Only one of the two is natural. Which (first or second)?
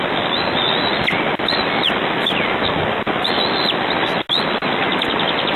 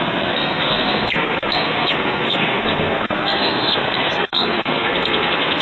first